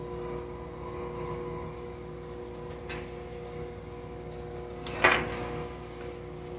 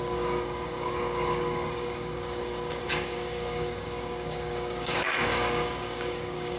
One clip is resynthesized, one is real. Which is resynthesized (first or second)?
second